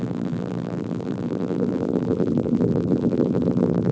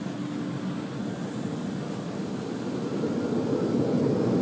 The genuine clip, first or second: second